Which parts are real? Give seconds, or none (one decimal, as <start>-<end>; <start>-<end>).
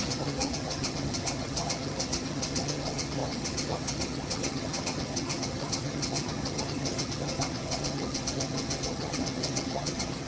none